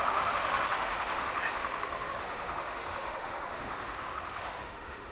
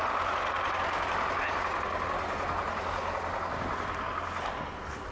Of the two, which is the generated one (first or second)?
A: first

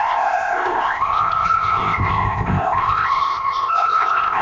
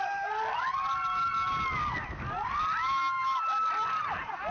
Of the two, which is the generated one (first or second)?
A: first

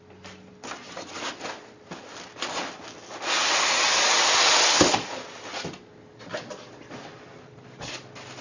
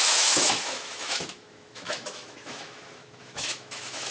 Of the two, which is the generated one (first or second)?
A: second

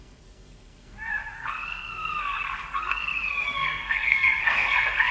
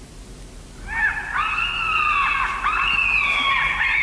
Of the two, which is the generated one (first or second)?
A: first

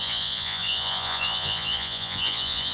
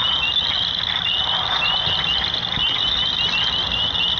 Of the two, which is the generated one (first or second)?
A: first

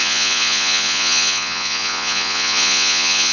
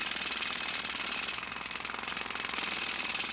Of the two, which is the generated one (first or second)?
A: first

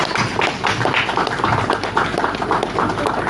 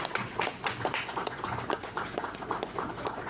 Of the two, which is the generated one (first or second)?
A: second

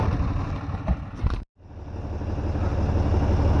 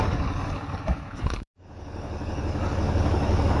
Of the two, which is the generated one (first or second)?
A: second